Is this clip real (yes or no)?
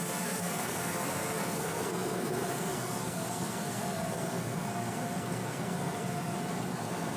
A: no